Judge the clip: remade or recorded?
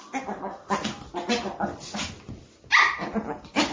recorded